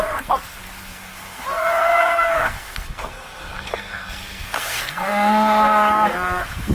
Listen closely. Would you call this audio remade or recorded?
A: remade